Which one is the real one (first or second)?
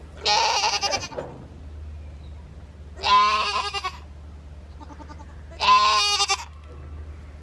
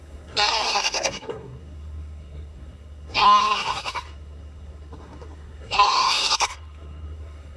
first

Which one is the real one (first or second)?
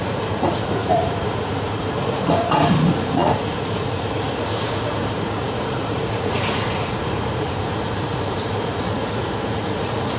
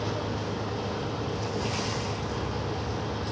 second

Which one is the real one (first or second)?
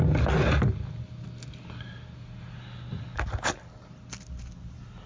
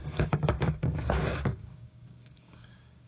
first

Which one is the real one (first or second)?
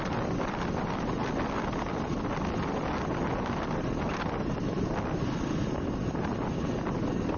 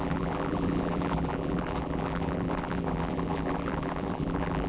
first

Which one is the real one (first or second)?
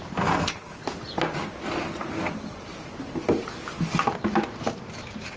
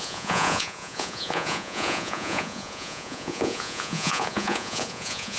first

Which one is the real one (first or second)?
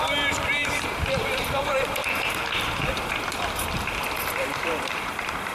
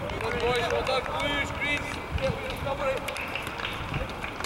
second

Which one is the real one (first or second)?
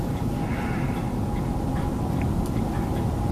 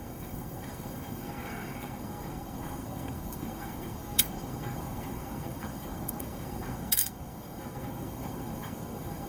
first